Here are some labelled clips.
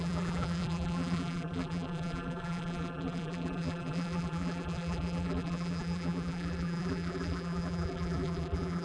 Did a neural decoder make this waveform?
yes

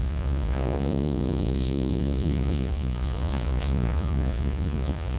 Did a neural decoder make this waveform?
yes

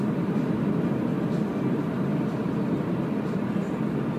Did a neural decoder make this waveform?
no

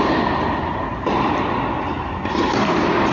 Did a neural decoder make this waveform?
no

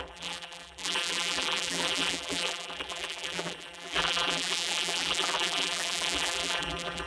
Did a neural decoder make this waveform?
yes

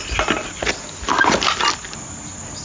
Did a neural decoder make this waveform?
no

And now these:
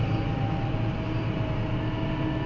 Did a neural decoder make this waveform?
no